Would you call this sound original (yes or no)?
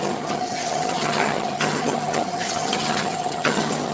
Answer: no